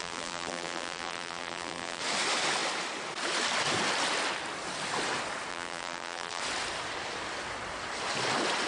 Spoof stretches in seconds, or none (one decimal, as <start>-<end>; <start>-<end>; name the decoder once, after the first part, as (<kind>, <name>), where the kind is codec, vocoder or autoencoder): 0.0-2.0 (vocoder, BigVGAN v2); 5.5-6.4